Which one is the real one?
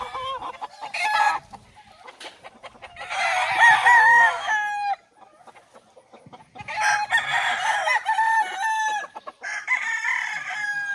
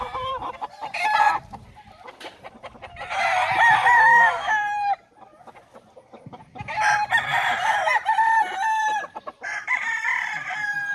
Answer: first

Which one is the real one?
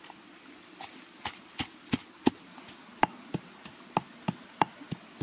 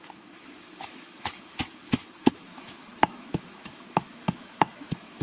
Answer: first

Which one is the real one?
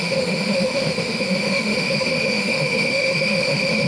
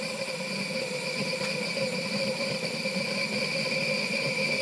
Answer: second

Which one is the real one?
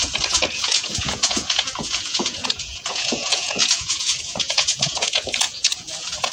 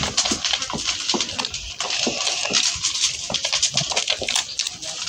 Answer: second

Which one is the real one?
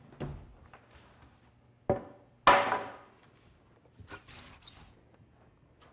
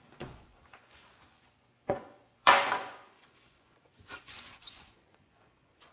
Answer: first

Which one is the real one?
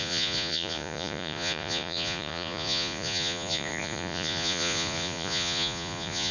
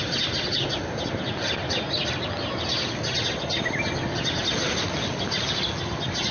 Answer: second